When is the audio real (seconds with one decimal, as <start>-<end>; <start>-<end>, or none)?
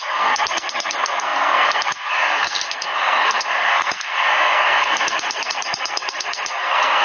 none